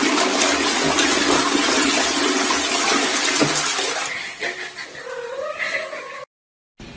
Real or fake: real